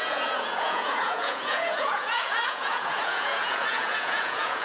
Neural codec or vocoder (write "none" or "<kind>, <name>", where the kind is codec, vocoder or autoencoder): vocoder, Vocos